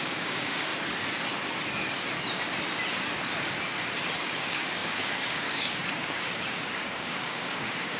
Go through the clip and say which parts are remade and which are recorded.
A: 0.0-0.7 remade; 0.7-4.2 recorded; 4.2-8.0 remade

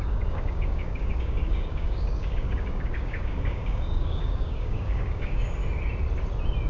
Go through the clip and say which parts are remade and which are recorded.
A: 0.0-5.6 remade; 5.6-6.7 recorded

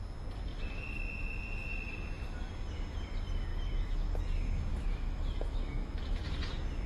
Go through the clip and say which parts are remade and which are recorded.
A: 0.0-3.5 recorded; 3.5-4.2 remade; 4.2-4.7 recorded; 4.7-6.3 remade; 6.3-6.9 recorded

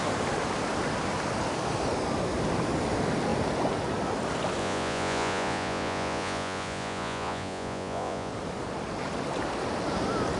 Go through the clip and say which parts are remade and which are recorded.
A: 0.0-4.6 recorded; 4.6-8.3 remade; 8.3-10.4 recorded

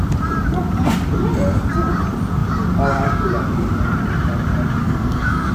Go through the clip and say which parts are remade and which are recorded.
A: 0.0-4.8 recorded; 4.8-5.5 remade

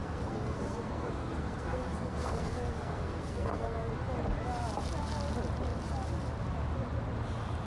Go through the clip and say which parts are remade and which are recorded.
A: 0.0-3.9 remade; 3.9-7.7 recorded

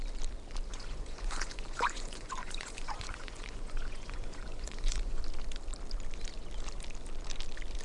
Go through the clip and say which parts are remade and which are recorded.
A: 0.0-0.7 recorded; 0.7-5.2 remade; 5.2-7.8 recorded

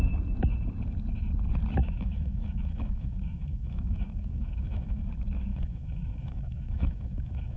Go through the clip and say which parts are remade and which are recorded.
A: 0.0-1.8 recorded; 1.8-5.1 remade; 5.1-5.5 recorded; 5.5-7.6 remade